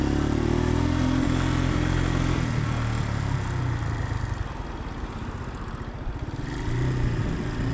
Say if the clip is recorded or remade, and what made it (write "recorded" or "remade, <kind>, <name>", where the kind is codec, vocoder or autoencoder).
recorded